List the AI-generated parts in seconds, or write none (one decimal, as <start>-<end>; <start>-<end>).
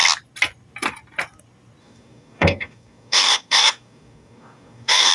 1.8-5.1